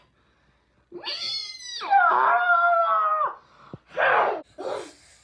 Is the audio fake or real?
real